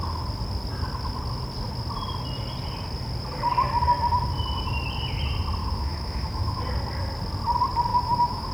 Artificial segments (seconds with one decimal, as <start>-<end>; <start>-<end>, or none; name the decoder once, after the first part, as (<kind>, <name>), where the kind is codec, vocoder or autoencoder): 5.6-6.6 (autoencoder, DAC-VAE); 7.9-8.5